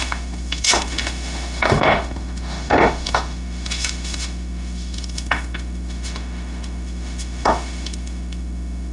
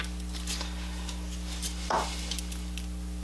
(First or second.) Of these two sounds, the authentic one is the second